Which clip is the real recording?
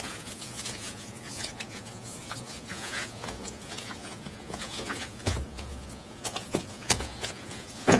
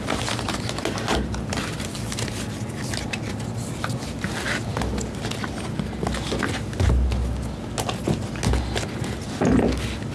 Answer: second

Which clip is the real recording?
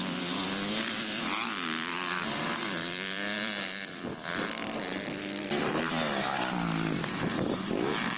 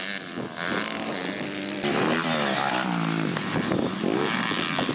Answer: second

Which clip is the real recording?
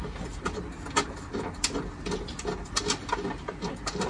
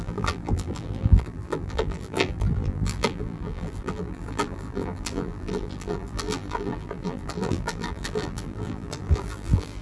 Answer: first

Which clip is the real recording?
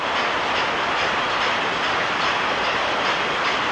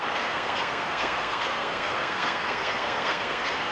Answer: first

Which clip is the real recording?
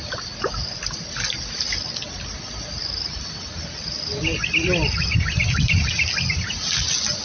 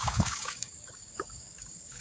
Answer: first